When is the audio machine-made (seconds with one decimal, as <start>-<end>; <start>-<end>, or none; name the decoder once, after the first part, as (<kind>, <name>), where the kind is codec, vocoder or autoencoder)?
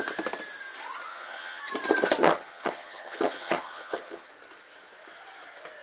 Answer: 1.1-1.6 (vocoder, HiFi-GAN); 2.2-4.3